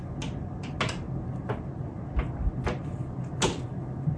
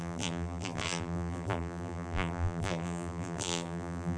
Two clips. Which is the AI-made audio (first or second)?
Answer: second